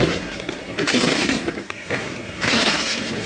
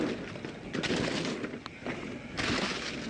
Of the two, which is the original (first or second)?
second